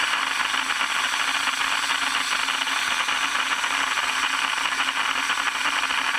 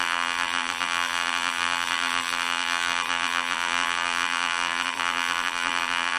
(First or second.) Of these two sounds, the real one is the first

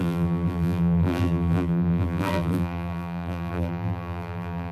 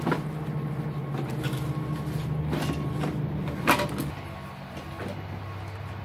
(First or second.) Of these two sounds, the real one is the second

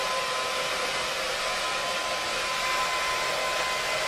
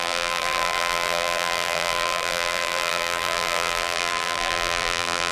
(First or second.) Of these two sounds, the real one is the first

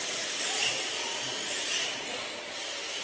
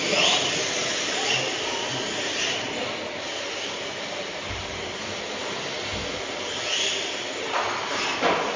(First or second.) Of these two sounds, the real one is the second